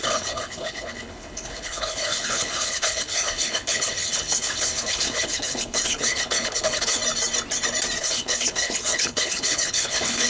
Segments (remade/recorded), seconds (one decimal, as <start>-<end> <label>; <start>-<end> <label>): 0.0-7.0 remade; 7.0-8.0 recorded; 8.0-10.3 remade